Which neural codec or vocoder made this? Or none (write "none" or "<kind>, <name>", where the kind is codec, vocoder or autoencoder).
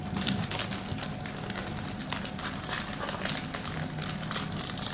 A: none